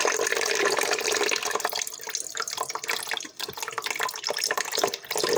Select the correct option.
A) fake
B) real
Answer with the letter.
B